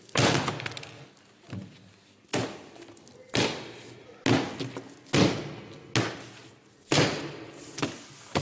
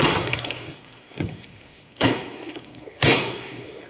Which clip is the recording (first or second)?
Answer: first